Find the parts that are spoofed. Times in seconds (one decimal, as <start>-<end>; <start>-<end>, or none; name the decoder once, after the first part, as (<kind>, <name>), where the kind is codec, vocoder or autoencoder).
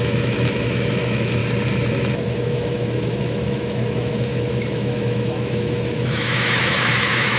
0.0-1.4 (autoencoder, DAC-VAE); 2.1-7.4